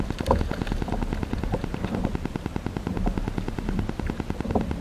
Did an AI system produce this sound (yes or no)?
no